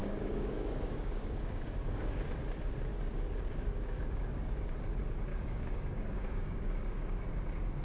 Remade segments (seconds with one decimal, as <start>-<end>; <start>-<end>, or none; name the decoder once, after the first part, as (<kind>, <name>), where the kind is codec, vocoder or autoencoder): 0.0-2.4 (codec, DAC); 2.9-4.7; 5.3-7.2